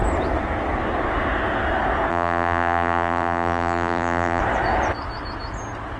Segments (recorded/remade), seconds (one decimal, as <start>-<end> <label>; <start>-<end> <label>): 0.0-2.1 recorded; 2.1-4.4 remade; 4.4-6.0 recorded

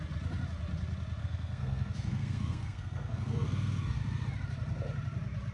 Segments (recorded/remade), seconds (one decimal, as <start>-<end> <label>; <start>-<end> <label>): 0.0-1.2 recorded; 1.2-4.0 remade; 4.0-5.5 recorded

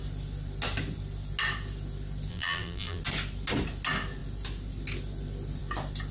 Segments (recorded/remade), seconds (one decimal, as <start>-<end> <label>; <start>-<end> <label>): 0.0-2.3 recorded; 2.3-3.0 remade; 3.0-6.1 recorded